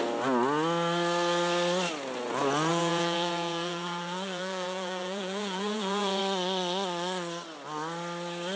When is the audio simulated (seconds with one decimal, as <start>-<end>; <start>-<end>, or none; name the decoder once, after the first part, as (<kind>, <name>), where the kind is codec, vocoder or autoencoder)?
2.7-6.2 (vocoder, Vocos)